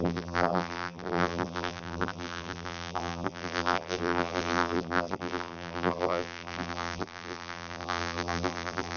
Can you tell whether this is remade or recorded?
remade